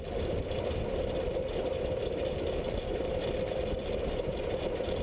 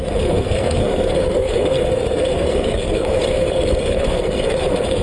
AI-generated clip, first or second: second